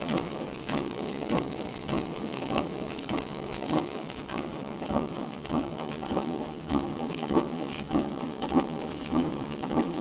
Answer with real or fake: fake